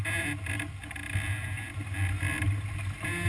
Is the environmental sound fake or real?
real